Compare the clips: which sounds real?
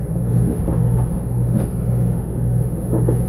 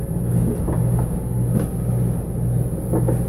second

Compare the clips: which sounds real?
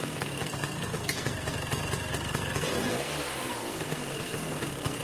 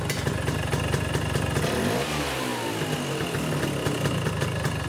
second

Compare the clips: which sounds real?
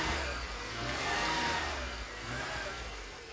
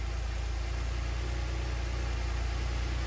second